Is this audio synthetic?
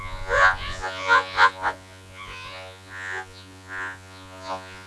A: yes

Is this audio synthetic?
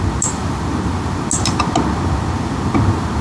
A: no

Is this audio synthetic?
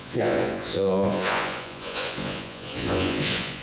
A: yes